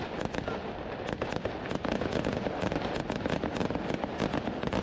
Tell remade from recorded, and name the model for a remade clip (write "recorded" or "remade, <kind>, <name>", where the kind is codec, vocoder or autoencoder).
recorded